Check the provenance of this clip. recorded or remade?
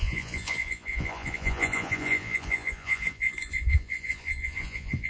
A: remade